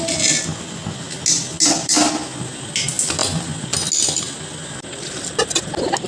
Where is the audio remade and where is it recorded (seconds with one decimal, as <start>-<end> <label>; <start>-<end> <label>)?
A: 0.0-6.1 recorded